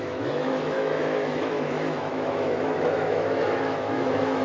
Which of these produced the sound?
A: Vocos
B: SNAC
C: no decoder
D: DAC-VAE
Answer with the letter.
D